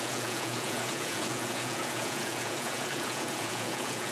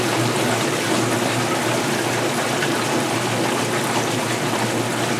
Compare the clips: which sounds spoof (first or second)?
first